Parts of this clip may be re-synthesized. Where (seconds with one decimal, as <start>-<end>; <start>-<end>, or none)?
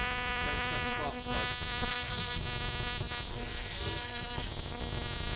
1.9-2.4; 3.3-4.5